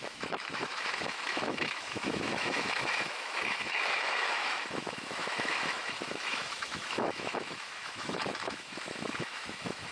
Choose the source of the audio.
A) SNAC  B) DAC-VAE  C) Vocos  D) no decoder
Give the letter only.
B